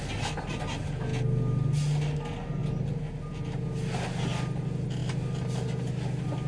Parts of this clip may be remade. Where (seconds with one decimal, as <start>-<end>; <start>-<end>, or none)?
none